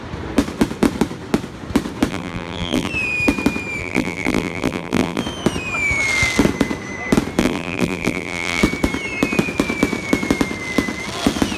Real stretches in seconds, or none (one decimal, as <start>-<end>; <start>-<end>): 0.0-2.1; 2.9-3.8; 5.2-7.4; 8.6-11.6